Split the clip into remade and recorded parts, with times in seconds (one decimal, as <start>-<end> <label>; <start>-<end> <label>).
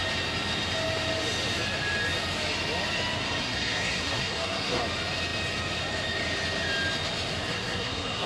0.0-3.4 recorded; 3.4-4.8 remade; 4.8-7.5 recorded; 7.5-8.3 remade